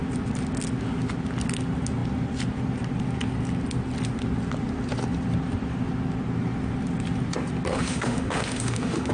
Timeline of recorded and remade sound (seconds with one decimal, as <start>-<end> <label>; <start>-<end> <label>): 0.0-7.7 recorded; 7.7-9.1 remade